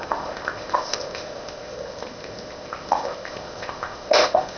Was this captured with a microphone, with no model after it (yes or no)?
no